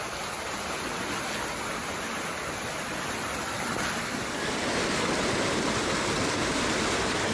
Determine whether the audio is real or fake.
real